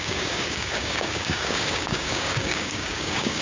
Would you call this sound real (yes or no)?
no